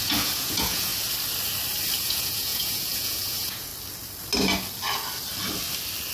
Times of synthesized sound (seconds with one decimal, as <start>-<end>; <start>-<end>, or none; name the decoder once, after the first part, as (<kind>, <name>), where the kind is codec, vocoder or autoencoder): 0.0-0.9 (vocoder, Vocos); 2.0-3.7